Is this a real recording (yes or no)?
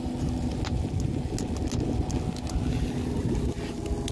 yes